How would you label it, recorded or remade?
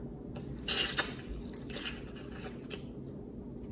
recorded